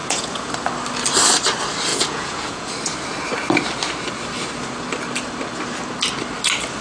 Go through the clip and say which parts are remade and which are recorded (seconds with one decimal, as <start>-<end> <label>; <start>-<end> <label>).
0.0-0.5 remade; 0.5-1.9 recorded; 1.9-2.7 remade; 2.7-6.8 recorded